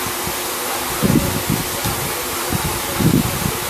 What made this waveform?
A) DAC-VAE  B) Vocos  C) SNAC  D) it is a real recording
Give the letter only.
D